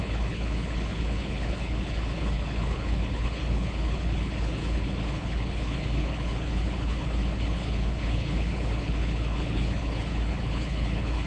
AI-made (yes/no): yes